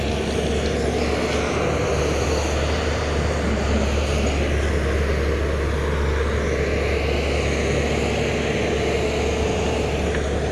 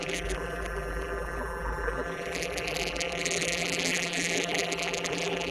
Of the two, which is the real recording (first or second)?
first